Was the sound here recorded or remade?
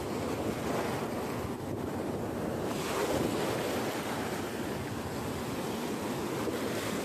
recorded